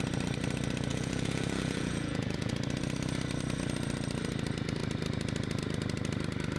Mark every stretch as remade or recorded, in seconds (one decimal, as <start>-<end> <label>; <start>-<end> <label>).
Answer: 0.0-0.9 recorded; 0.9-2.5 remade; 2.5-6.6 recorded